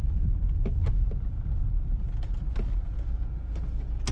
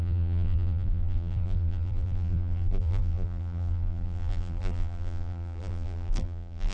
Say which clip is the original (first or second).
first